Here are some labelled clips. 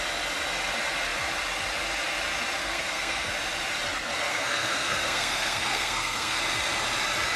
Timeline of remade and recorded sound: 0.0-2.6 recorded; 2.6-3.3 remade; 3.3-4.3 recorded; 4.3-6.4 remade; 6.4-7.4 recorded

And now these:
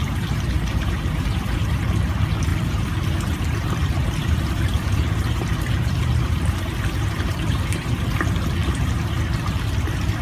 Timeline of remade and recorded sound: 0.0-1.8 remade; 1.8-2.5 recorded; 2.5-3.4 remade; 3.4-4.2 recorded; 4.2-7.9 remade; 7.9-8.6 recorded; 8.6-9.2 remade; 9.2-10.2 recorded

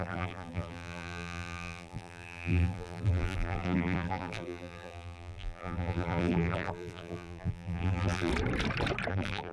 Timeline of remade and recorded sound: 0.0-8.3 remade; 8.3-9.1 recorded; 9.1-9.5 remade

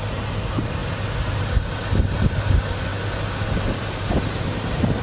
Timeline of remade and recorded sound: 0.0-0.8 remade; 0.8-1.3 recorded; 1.3-2.9 remade; 2.9-4.3 recorded; 4.3-5.0 remade